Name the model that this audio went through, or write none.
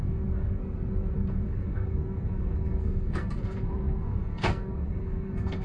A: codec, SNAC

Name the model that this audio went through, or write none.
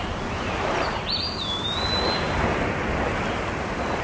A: none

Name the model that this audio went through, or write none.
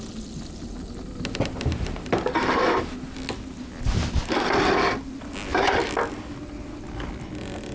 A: none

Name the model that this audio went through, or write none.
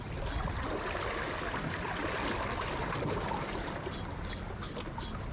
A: none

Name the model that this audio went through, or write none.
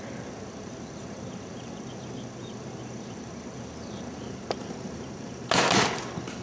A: none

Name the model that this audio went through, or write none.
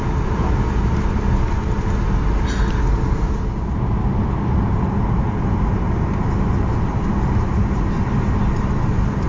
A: none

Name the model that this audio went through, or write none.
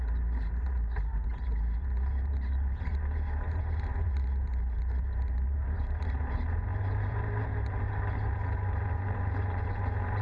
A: vocoder, BigVGAN v2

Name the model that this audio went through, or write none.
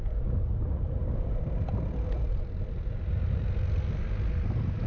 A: none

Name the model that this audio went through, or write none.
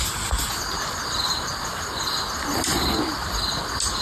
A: none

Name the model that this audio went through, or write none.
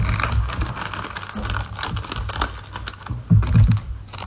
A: none